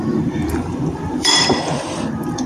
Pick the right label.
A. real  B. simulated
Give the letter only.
B